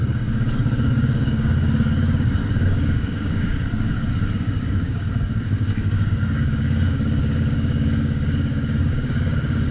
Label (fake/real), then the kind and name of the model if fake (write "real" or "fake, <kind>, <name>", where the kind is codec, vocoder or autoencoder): fake, codec, DAC